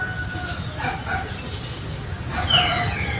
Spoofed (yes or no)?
no